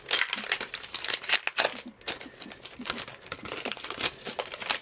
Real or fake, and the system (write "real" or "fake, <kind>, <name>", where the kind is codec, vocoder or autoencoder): real